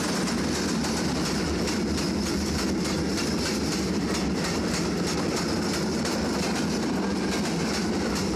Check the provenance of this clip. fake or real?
real